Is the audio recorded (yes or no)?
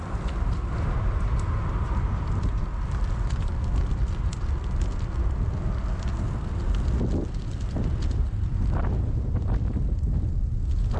yes